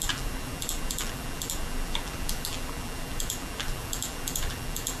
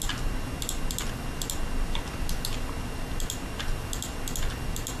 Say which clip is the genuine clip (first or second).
second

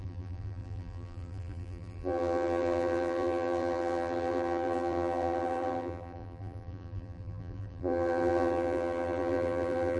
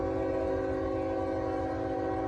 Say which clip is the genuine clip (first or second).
second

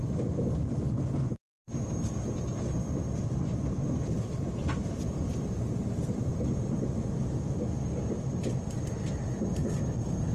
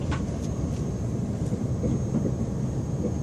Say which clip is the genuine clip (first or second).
second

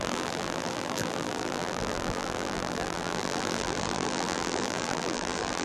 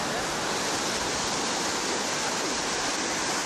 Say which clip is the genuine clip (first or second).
second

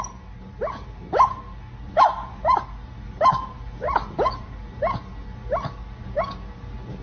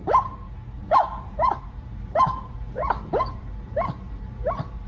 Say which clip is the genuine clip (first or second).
first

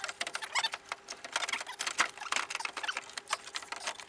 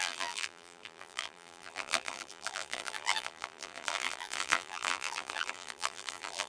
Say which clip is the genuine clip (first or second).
first